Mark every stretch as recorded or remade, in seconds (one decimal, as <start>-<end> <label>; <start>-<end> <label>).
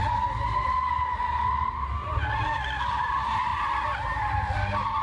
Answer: 0.0-5.0 recorded